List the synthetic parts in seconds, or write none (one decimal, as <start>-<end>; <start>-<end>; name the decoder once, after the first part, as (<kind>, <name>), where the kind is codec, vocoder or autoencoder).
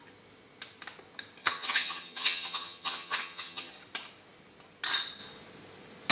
1.4-3.7 (vocoder, HiFi-GAN)